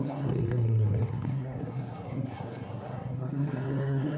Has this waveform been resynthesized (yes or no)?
yes